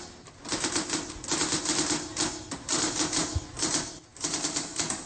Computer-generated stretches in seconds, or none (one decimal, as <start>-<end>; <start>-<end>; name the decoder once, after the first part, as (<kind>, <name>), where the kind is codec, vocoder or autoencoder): none

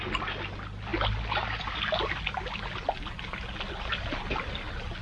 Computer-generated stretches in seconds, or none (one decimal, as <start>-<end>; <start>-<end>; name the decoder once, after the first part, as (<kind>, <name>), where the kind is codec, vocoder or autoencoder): none

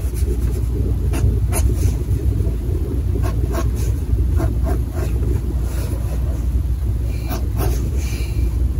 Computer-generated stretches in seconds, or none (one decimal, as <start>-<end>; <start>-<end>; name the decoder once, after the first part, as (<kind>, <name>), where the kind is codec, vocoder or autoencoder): 2.2-2.8 (vocoder, BigVGAN v2)

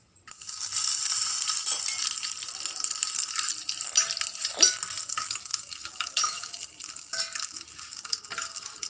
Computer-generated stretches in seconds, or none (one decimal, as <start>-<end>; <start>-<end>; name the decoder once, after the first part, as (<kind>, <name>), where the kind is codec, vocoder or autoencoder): none

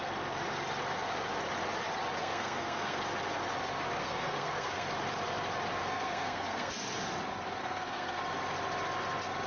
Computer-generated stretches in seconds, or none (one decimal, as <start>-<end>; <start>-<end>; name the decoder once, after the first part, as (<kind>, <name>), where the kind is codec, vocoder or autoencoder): 2.2-3.0 (codec, SNAC); 4.0-4.9; 5.8-6.7; 7.6-8.2

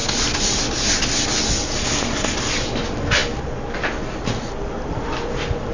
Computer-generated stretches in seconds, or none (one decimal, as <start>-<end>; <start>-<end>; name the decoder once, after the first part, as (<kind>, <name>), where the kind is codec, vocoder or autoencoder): none

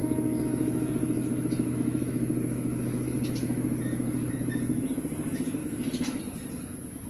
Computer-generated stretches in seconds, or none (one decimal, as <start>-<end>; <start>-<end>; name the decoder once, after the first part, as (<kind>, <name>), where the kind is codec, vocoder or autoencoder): 0.0-4.3 (autoencoder, DAC-VAE); 5.6-6.2